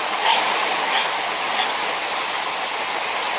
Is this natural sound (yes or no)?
yes